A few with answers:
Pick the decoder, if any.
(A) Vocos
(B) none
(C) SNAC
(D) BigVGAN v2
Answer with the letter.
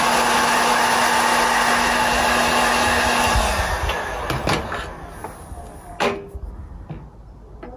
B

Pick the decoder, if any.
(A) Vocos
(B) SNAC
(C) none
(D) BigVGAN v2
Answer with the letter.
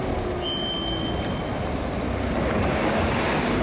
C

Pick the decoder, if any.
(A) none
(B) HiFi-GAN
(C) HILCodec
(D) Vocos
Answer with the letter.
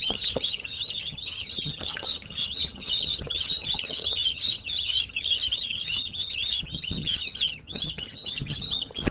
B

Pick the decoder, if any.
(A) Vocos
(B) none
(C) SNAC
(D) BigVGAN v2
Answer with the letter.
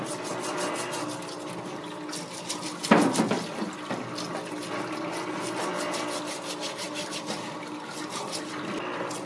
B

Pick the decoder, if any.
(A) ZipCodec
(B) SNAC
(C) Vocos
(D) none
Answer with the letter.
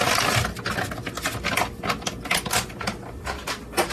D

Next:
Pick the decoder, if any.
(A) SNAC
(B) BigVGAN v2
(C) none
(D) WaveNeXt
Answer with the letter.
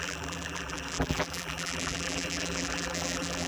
B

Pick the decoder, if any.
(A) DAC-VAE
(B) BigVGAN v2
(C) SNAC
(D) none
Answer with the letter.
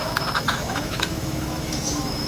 A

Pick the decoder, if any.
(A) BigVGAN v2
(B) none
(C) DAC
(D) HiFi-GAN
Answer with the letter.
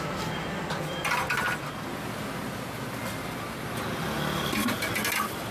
B